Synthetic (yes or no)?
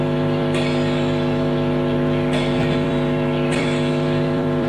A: yes